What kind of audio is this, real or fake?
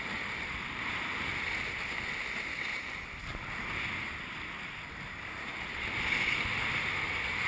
real